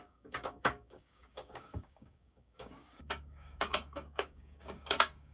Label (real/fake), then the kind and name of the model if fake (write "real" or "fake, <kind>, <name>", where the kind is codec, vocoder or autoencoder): fake, codec, DAC